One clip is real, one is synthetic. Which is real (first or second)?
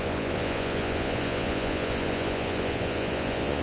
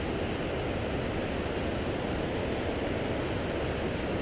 second